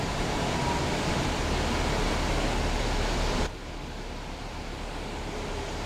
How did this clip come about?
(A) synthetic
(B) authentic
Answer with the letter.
B